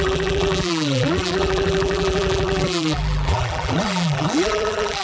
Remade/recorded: remade